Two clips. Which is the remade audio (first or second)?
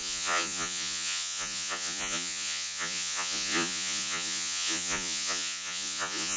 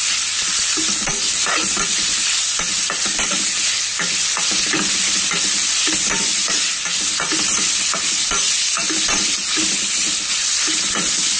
first